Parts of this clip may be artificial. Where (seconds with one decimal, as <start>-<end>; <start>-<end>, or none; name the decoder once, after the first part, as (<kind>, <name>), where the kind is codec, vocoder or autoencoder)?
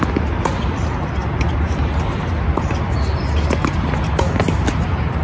none